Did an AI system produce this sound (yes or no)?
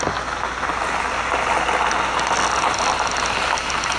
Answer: no